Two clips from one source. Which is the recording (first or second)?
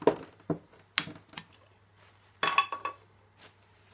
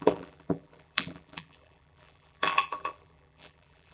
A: first